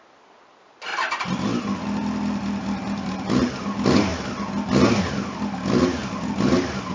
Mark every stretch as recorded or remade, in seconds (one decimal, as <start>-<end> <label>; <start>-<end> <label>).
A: 0.0-6.9 recorded